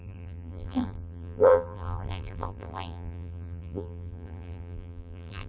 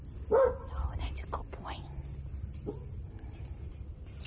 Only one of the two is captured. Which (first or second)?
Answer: second